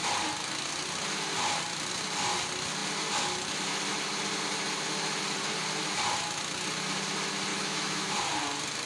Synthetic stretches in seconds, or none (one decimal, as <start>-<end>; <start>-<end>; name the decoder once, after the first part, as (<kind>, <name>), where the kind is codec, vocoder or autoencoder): 7.5-8.2 (autoencoder, DAC-VAE)